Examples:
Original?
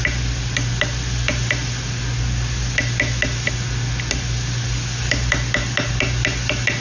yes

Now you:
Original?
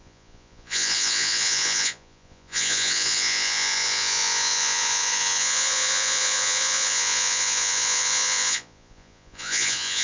no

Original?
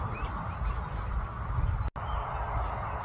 yes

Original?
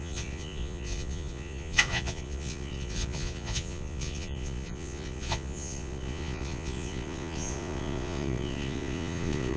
no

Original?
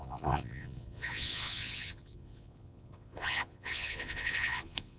no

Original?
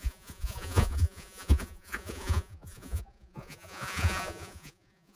no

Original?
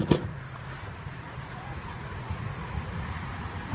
no